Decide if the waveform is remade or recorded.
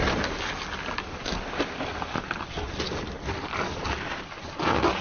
recorded